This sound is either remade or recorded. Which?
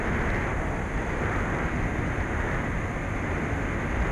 recorded